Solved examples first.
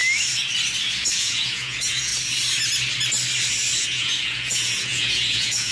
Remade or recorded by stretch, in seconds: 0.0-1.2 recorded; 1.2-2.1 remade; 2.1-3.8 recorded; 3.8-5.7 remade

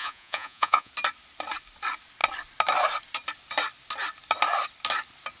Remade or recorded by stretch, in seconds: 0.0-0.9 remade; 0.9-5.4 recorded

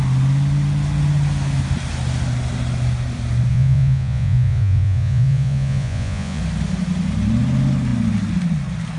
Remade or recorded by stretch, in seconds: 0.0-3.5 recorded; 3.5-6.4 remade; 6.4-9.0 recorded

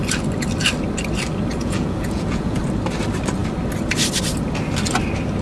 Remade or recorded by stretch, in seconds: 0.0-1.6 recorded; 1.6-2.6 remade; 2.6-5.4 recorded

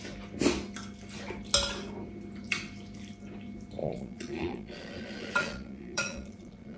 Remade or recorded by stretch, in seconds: 0.0-3.8 recorded; 3.8-6.8 remade

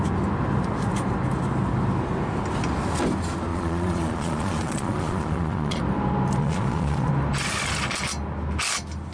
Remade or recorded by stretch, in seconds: 0.0-3.5 recorded; 3.5-5.8 remade; 5.8-6.4 recorded; 6.4-7.1 remade; 7.1-9.1 recorded